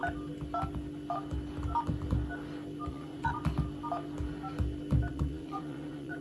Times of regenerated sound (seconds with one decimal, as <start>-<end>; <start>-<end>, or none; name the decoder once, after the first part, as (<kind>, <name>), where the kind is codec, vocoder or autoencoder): 2.9-3.4 (vocoder, Vocos); 5.1-6.2